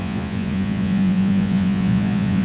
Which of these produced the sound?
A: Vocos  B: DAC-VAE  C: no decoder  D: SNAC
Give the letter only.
A